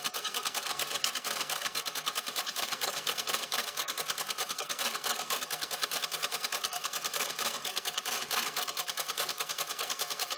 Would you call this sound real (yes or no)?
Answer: no